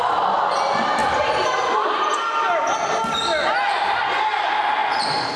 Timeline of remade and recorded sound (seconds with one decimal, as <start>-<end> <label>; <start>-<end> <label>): 0.0-5.4 recorded